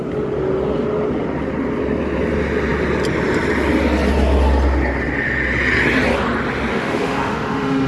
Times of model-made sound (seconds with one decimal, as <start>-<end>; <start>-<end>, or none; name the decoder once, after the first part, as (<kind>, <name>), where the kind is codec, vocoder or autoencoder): 6.7-7.9 (autoencoder, DAC-VAE)